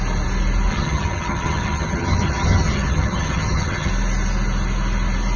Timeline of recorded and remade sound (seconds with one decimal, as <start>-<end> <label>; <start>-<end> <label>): 0.0-0.7 recorded; 0.7-3.9 remade; 3.9-5.4 recorded